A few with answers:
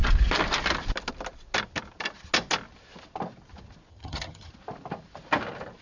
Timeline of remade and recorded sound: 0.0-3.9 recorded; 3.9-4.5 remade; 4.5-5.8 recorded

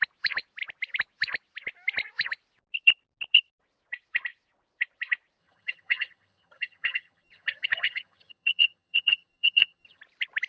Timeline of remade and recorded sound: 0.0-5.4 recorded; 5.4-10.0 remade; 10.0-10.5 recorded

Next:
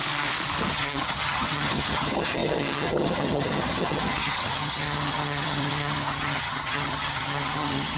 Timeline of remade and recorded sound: 0.0-0.7 recorded; 0.7-8.0 remade

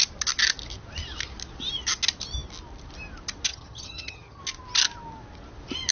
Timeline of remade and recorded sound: 0.0-3.5 recorded; 3.5-4.4 remade; 4.4-5.9 recorded

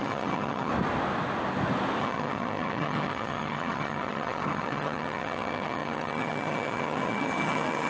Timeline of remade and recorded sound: 0.0-0.7 remade; 0.7-2.0 recorded; 2.0-7.9 remade